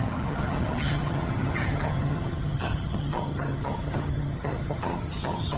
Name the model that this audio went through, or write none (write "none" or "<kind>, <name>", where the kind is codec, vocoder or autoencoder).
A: vocoder, HiFi-GAN